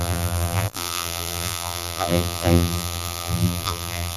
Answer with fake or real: fake